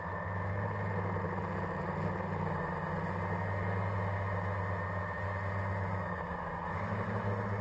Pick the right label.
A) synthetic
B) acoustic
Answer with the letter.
B